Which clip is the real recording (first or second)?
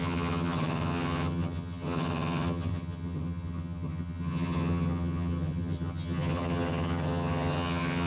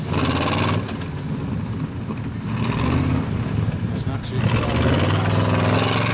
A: second